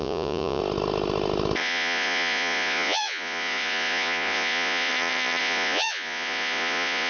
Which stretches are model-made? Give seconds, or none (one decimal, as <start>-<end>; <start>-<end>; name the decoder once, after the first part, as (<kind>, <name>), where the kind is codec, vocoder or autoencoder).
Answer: 0.0-0.6 (vocoder, Vocos); 1.6-4.9; 5.4-7.1